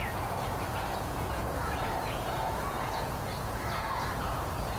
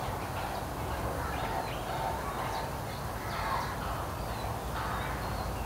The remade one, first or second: first